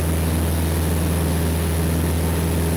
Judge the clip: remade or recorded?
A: recorded